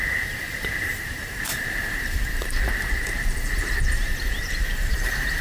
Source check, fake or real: fake